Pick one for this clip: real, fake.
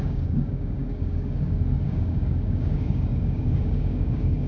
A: fake